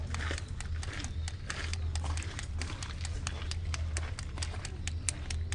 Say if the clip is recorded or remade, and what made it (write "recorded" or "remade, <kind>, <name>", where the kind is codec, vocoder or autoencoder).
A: recorded